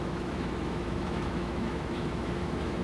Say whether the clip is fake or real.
fake